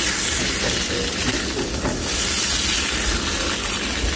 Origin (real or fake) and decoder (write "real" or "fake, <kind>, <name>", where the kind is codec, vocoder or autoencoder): real